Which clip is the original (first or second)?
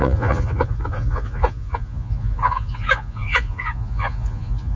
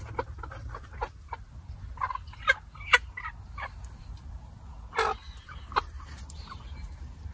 second